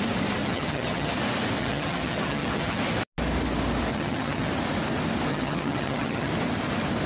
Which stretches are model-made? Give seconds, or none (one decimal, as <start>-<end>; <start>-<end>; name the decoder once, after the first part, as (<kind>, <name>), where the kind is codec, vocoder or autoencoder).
0.4-1.1 (vocoder, HiFi-GAN); 1.6-2.8; 3.9-4.5; 5.3-6.3